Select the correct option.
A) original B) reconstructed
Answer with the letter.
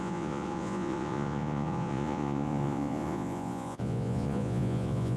B